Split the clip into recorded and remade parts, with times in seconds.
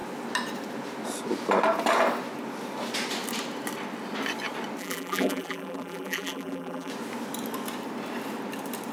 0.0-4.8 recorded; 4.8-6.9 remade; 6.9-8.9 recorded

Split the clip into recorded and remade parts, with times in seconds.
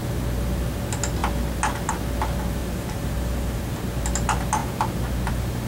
0.0-2.6 recorded; 2.6-3.6 remade; 3.6-5.7 recorded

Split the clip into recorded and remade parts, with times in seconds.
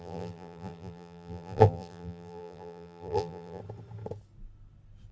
0.0-3.6 remade; 3.6-5.1 recorded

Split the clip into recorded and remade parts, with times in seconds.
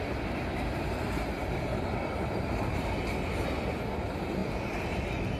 0.0-4.4 recorded; 4.4-4.9 remade; 4.9-5.4 recorded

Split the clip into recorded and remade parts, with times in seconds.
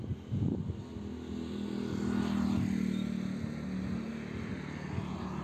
0.0-5.4 recorded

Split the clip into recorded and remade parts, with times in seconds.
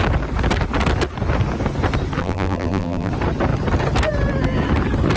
0.0-2.2 recorded; 2.2-3.1 remade; 3.1-5.2 recorded